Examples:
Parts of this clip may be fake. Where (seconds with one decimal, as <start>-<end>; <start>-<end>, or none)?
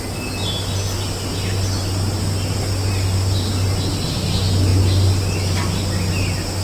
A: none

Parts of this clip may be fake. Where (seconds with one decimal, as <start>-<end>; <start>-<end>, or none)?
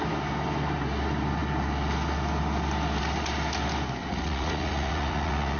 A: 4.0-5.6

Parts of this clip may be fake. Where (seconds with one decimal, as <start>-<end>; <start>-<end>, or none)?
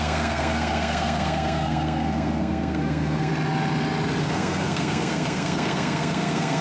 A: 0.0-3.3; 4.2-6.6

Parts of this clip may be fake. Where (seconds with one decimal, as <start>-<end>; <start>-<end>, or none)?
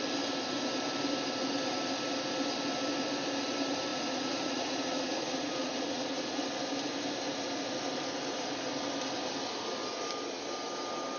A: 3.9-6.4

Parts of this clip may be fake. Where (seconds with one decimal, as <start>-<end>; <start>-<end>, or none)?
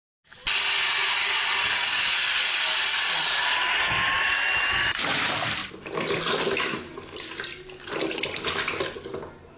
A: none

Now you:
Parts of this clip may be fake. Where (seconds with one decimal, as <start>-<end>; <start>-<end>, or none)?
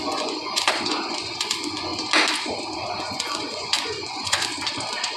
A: 0.0-1.9; 3.0-4.5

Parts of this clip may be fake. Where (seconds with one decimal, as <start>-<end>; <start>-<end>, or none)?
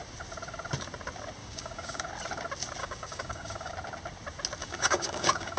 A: 1.4-2.1; 2.8-3.7; 4.6-5.6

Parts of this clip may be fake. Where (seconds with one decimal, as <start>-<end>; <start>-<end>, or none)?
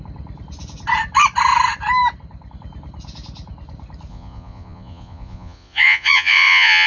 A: 4.1-6.9